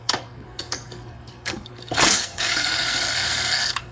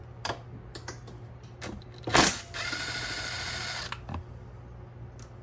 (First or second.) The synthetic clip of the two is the first